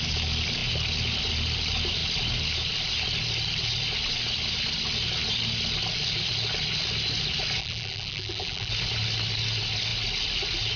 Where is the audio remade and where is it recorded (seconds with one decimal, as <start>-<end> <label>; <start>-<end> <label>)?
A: 0.0-7.6 recorded; 7.6-8.7 remade; 8.7-10.8 recorded